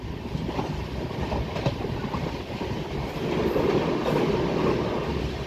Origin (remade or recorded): recorded